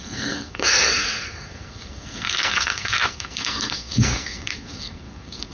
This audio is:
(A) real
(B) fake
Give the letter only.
B